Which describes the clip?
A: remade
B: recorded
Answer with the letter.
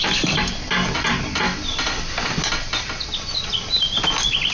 B